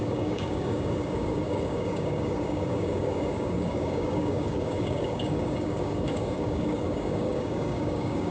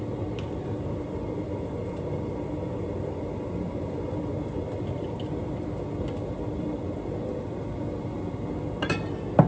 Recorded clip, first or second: second